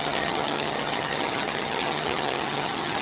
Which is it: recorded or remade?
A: remade